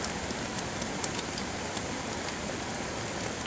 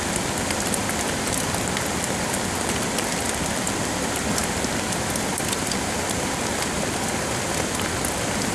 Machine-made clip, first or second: second